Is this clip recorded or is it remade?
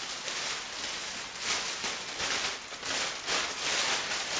recorded